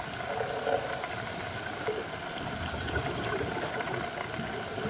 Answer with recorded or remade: recorded